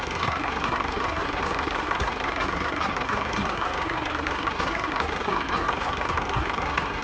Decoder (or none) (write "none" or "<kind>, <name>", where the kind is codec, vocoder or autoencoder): codec, SNAC